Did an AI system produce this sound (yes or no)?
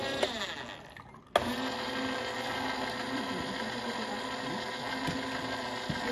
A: no